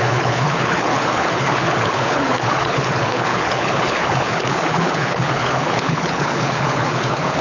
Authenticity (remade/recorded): remade